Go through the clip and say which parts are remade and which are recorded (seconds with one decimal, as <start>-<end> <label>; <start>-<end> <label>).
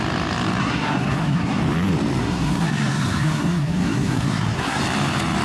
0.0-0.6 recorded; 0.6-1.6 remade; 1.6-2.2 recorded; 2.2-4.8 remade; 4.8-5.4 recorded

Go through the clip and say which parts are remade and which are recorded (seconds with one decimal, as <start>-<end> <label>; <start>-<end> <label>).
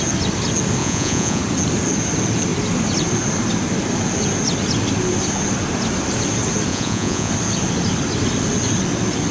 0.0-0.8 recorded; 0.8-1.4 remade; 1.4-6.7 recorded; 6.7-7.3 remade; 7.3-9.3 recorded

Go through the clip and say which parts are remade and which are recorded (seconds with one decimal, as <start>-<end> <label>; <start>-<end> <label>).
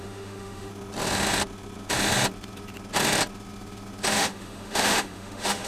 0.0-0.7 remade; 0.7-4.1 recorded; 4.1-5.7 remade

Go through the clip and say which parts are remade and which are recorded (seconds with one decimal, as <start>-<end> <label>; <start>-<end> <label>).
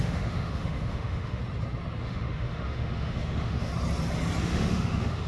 0.0-1.4 remade; 1.4-2.0 recorded; 2.0-3.7 remade; 3.7-4.4 recorded; 4.4-5.3 remade